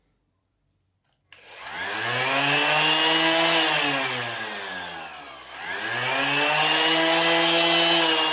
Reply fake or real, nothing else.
real